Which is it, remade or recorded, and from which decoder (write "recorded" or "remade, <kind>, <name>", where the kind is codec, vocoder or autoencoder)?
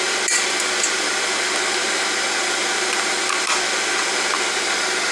recorded